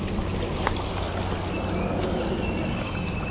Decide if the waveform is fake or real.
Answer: real